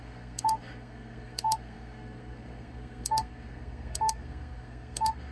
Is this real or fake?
fake